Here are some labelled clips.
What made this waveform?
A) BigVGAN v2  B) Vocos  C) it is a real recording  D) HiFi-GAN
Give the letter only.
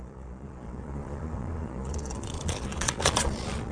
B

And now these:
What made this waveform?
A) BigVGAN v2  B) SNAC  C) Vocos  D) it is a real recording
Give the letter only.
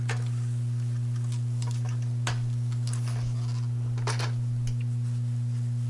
D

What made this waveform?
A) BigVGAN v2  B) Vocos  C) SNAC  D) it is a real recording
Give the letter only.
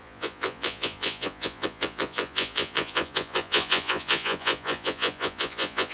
B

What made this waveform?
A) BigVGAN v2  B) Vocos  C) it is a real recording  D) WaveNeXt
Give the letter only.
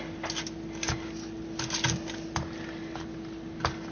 C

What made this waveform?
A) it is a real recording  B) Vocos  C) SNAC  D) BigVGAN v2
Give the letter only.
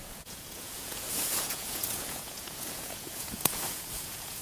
B